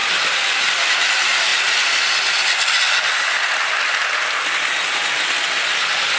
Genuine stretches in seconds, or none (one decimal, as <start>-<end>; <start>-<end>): 0.0-6.2